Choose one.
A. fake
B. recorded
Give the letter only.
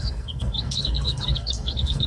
A